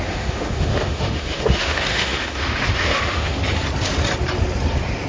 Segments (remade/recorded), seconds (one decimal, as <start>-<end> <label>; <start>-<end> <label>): 0.0-3.4 remade; 3.4-5.1 recorded